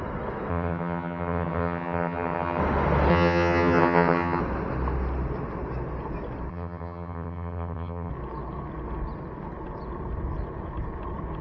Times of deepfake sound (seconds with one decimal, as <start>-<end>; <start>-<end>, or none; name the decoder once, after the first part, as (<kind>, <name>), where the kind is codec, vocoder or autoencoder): 0.5-2.6 (vocoder, HiFi-GAN); 3.1-4.4; 6.5-8.1